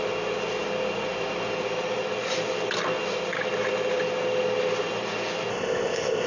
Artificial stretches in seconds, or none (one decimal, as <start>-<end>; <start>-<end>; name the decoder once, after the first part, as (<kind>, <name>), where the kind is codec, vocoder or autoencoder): 5.5-6.3 (codec, ZipCodec)